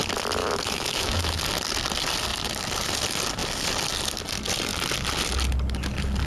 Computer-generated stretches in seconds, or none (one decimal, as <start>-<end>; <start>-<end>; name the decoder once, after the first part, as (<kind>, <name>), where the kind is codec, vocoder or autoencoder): 0.4-1.4 (autoencoder, DAC-VAE)